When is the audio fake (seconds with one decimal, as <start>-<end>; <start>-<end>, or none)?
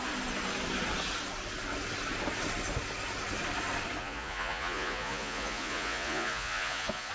4.0-7.1